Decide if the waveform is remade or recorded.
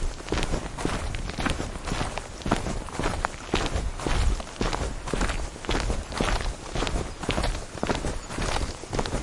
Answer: recorded